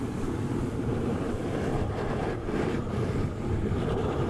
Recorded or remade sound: remade